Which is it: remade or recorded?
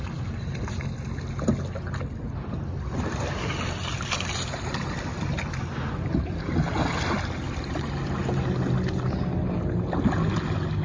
recorded